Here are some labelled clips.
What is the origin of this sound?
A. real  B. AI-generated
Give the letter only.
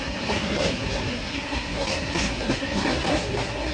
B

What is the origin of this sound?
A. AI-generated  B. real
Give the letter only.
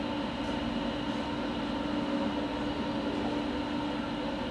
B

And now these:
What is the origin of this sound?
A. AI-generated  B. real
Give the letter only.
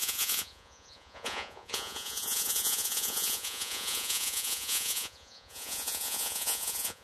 A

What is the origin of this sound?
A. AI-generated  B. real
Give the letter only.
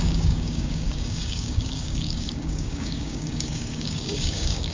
A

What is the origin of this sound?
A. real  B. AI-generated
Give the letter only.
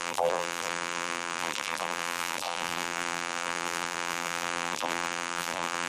B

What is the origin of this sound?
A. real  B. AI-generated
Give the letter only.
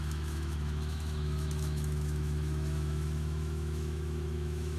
B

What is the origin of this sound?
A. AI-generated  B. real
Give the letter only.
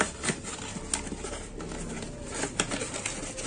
B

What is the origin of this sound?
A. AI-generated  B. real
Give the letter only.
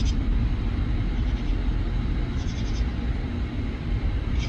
B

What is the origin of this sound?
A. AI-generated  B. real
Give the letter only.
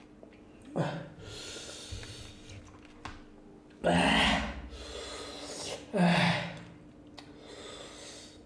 B